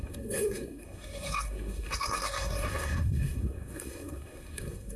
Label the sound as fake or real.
fake